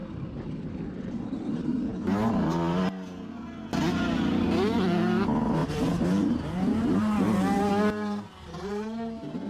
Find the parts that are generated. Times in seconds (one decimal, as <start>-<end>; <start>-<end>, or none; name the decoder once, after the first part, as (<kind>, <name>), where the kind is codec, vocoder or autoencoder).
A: 5.6-7.7 (vocoder, BigVGAN v2)